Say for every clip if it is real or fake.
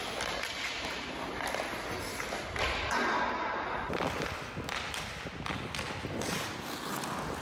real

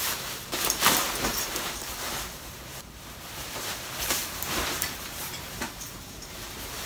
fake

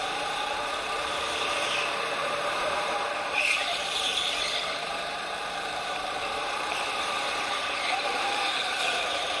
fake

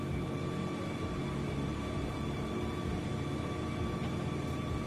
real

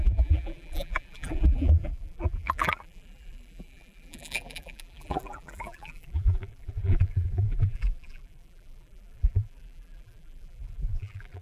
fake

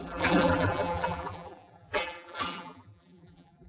fake